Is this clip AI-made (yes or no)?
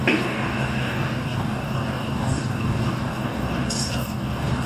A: yes